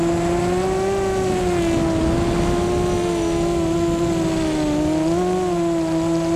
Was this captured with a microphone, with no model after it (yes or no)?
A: yes